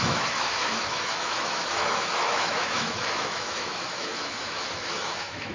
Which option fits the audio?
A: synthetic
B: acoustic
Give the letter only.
A